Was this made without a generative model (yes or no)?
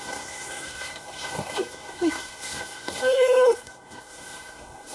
no